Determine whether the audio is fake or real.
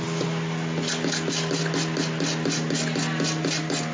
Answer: real